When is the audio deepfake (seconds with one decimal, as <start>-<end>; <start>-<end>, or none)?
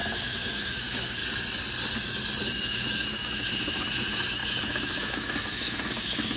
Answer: 0.0-1.2; 2.4-6.4